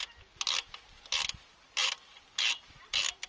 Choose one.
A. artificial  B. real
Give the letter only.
B